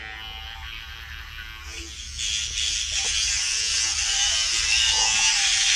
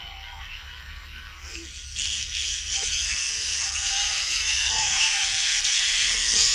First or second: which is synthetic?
second